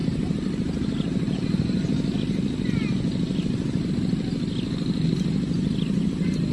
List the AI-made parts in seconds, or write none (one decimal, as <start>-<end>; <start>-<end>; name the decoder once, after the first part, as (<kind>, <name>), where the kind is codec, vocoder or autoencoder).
none